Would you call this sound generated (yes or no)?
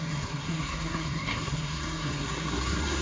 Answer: yes